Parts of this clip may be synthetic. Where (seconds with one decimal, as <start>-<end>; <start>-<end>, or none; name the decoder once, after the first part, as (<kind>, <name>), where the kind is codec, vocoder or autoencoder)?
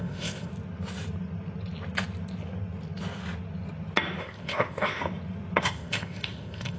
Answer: 0.0-0.5 (codec, ZipCodec); 4.2-5.0; 5.6-6.8